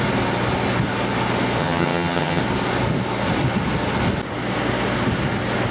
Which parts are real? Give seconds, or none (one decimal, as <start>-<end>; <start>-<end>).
0.0-1.6; 2.4-5.7

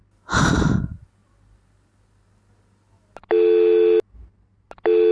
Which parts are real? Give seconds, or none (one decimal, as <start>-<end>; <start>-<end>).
0.0-5.1

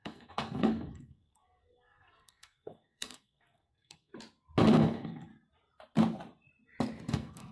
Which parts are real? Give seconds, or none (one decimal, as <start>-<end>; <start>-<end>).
4.1-4.7; 5.3-7.1